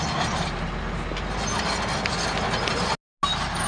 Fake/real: real